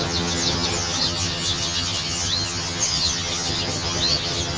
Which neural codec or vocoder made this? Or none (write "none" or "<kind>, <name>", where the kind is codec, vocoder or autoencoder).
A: vocoder, HiFi-GAN